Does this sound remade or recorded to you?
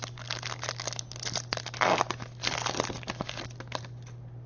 recorded